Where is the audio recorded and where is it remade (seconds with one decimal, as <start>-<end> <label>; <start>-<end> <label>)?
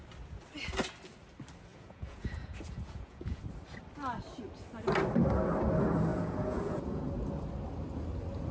0.0-1.7 recorded; 1.7-3.4 remade; 3.4-6.1 recorded; 6.1-7.1 remade; 7.1-8.5 recorded